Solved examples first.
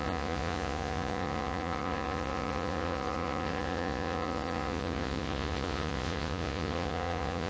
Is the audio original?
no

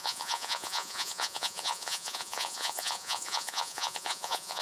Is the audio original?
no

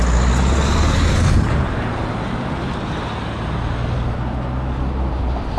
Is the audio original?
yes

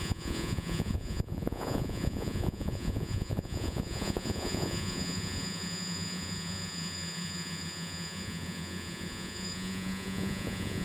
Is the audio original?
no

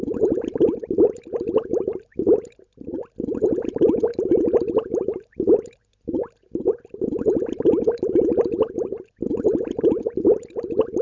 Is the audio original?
yes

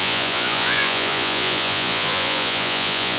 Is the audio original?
no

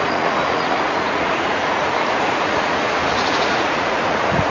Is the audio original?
no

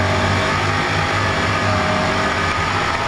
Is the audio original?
yes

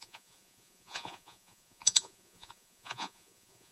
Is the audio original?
no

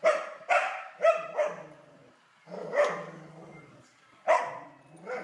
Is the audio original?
yes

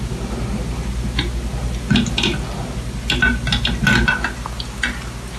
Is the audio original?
yes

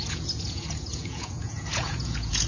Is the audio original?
no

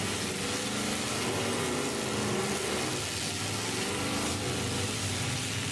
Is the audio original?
yes